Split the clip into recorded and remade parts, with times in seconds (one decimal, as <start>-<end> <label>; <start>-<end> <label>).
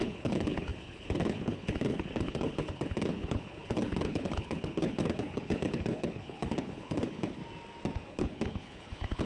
0.0-7.4 remade; 7.4-8.1 recorded; 8.1-9.3 remade